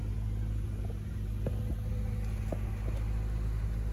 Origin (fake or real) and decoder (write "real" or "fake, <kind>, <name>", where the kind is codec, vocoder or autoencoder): real